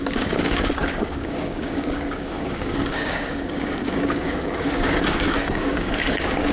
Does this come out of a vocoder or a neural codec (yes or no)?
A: yes